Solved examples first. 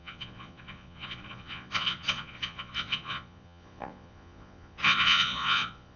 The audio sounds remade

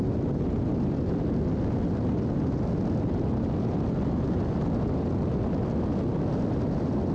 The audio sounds recorded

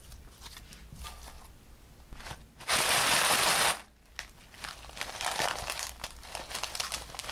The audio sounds recorded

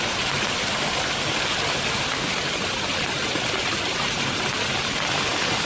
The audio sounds recorded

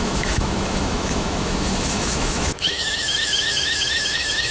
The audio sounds remade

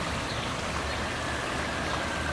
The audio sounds recorded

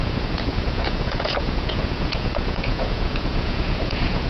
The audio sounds remade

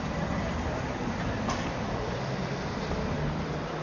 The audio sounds remade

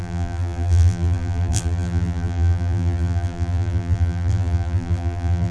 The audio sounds remade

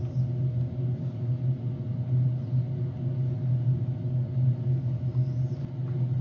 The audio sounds recorded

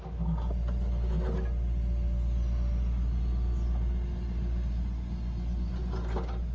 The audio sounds recorded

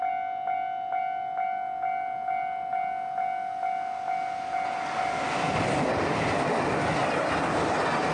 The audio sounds recorded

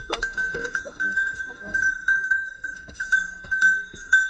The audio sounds remade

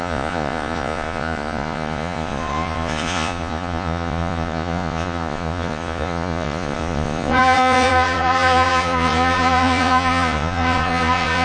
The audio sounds remade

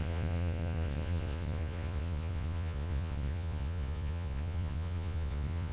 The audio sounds remade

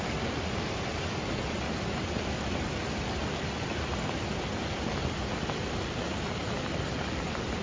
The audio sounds recorded